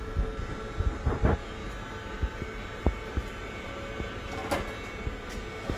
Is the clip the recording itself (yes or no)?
yes